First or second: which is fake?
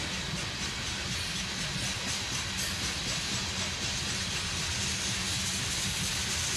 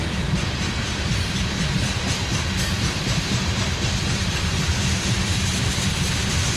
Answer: second